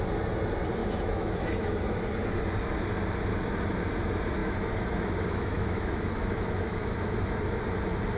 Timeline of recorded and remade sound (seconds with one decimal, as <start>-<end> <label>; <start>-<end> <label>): 0.0-0.8 recorded; 0.8-2.1 remade; 2.1-4.4 recorded; 4.4-6.9 remade; 6.9-8.2 recorded